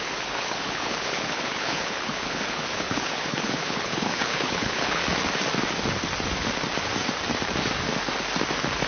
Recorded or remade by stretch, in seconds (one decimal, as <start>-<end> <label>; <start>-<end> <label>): 0.0-5.0 remade; 5.0-8.9 recorded